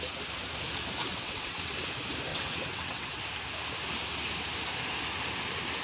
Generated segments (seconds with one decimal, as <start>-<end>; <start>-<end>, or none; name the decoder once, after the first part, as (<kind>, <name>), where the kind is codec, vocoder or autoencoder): 1.1-1.8 (vocoder, WaveNeXt); 2.3-3.2